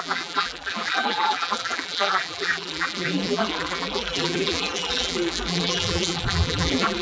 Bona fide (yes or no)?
no